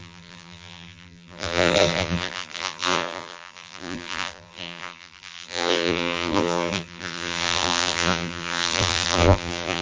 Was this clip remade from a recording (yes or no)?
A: yes